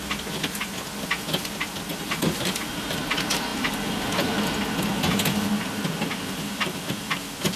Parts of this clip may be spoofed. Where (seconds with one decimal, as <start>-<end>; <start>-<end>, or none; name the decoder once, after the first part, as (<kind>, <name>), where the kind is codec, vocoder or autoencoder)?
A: 1.9-3.0 (vocoder, BigVGAN v2)